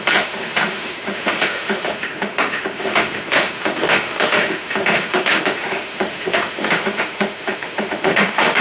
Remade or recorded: remade